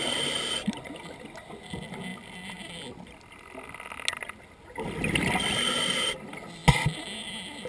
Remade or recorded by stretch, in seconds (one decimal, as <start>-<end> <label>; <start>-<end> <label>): 0.0-7.7 recorded